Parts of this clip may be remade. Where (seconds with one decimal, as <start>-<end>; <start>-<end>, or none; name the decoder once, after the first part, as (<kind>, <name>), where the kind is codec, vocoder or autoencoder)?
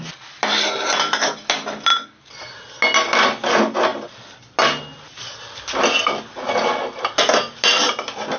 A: none